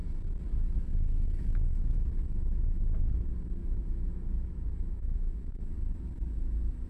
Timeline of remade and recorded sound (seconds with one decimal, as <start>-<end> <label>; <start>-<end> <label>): 0.0-3.6 recorded; 3.6-5.7 remade; 5.7-6.9 recorded